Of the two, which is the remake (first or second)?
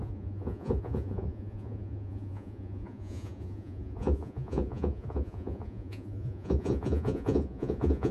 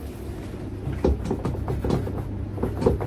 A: first